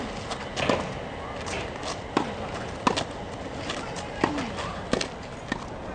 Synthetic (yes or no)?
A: no